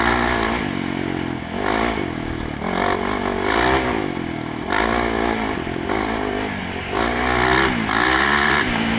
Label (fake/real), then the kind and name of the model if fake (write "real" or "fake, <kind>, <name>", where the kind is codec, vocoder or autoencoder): real